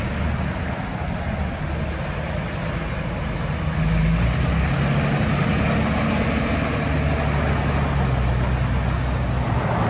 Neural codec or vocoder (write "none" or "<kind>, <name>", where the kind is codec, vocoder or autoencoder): none